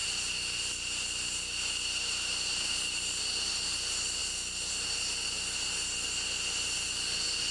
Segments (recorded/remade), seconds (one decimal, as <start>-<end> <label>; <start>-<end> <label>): 0.0-7.5 recorded